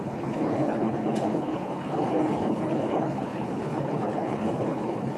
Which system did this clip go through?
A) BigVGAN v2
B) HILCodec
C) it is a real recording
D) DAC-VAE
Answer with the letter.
B